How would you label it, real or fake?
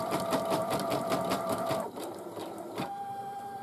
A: fake